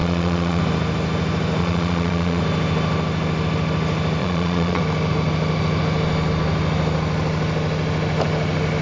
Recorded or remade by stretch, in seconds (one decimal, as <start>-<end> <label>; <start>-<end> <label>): 0.0-0.6 remade; 0.6-1.6 recorded; 1.6-2.4 remade; 2.4-4.2 recorded; 4.2-4.8 remade; 4.8-8.8 recorded